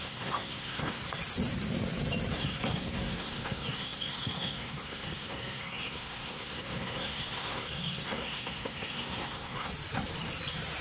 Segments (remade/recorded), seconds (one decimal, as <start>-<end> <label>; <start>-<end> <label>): 0.0-1.0 remade; 1.0-2.3 recorded; 2.3-9.7 remade; 9.7-10.8 recorded